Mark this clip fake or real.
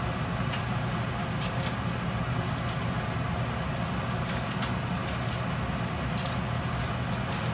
real